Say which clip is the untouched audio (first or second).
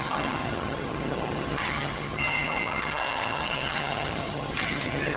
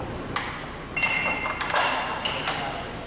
second